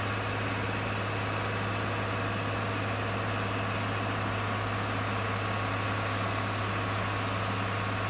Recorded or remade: recorded